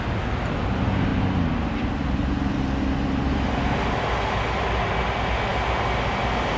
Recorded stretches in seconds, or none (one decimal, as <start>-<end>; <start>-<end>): 0.0-6.6